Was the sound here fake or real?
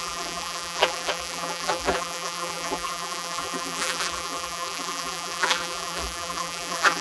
fake